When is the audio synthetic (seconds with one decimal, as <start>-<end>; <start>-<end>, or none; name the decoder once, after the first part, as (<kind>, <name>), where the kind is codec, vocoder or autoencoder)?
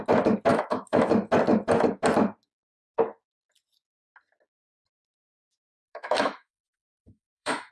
0.5-1.1 (autoencoder, DAC-VAE); 5.7-7.7